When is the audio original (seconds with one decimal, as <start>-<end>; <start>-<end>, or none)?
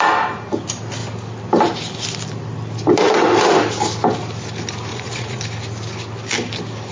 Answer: 0.0-4.9; 5.4-6.9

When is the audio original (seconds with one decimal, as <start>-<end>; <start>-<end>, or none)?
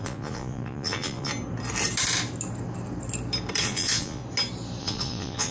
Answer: 1.3-3.6; 4.2-4.8